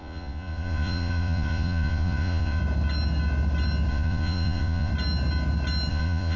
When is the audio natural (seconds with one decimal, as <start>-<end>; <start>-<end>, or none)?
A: 2.6-3.9; 4.9-5.9